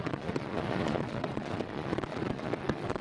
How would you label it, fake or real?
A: fake